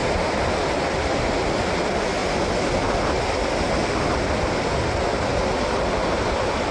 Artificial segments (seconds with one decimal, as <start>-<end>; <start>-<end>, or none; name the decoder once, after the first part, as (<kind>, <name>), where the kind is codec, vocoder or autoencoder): none